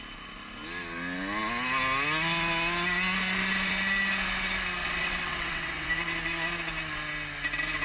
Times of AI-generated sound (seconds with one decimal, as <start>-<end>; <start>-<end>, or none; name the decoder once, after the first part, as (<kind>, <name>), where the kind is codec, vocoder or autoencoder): 4.8-5.9 (vocoder, WaveNeXt)